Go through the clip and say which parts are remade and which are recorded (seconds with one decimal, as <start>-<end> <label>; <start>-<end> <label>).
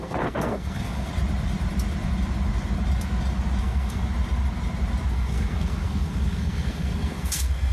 0.0-1.1 remade; 1.1-3.6 recorded; 3.6-4.0 remade; 4.0-5.1 recorded; 5.1-7.7 remade